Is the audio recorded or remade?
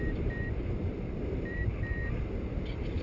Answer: recorded